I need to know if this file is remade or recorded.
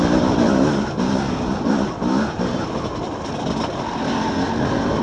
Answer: recorded